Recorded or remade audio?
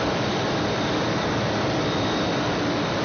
remade